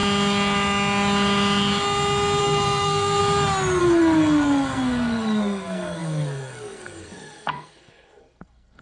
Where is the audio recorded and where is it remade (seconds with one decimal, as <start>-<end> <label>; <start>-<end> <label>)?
0.0-2.4 recorded; 2.4-3.2 remade; 3.2-3.8 recorded; 3.8-8.8 remade